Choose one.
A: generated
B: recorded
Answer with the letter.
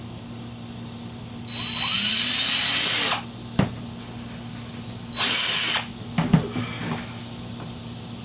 B